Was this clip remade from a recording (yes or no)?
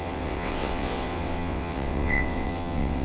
yes